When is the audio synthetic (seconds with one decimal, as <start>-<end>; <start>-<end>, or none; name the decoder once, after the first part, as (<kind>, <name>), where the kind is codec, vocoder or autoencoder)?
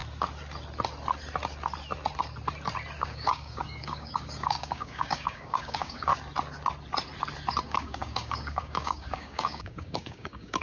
3.0-6.1 (codec, DAC); 7.6-10.6